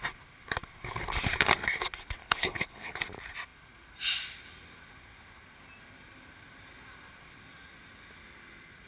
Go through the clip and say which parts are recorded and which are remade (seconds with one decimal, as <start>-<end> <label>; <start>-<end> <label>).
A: 0.0-2.2 recorded; 2.2-2.9 remade; 2.9-8.9 recorded